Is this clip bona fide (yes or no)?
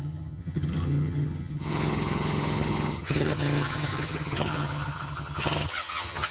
no